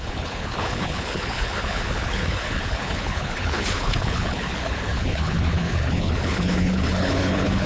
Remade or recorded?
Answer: remade